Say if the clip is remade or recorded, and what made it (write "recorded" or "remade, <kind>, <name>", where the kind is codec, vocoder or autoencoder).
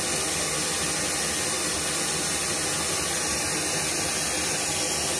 recorded